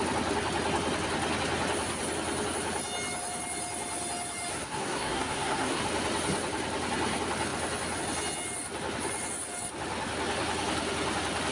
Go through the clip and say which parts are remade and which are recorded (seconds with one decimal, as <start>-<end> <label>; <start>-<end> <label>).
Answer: 0.0-4.5 recorded; 4.5-5.8 remade; 5.8-11.5 recorded